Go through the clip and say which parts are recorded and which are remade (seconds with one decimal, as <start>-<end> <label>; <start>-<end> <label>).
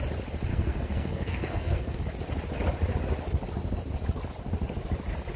0.0-0.5 recorded; 0.5-2.0 remade; 2.0-5.4 recorded